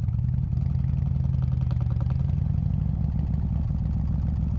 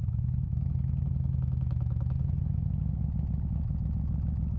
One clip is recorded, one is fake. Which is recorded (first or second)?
first